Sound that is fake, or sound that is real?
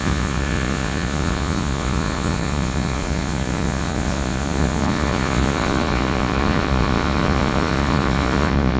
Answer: fake